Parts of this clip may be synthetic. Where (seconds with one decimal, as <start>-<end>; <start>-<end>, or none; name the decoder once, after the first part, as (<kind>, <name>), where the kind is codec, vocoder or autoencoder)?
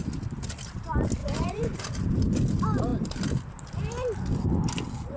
1.2-1.8 (vocoder, Vocos)